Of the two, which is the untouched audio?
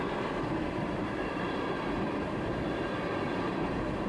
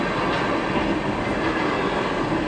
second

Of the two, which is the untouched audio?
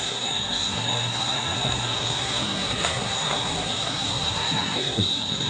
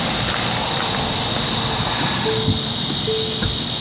second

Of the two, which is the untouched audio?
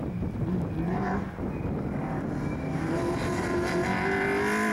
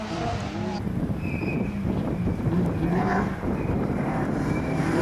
first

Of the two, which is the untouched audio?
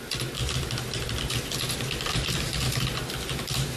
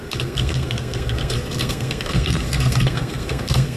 first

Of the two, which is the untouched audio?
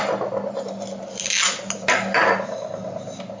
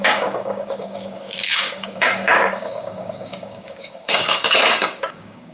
first